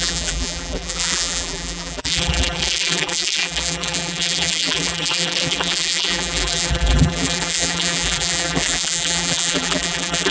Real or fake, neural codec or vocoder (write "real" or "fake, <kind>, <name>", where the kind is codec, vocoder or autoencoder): fake, vocoder, BigVGAN v2